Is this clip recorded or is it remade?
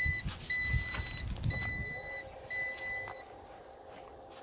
recorded